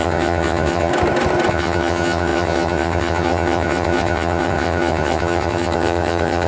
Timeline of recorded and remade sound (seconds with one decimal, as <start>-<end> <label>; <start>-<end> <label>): 0.0-0.9 remade; 0.9-1.5 recorded; 1.5-6.5 remade